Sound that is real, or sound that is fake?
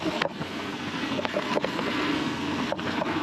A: fake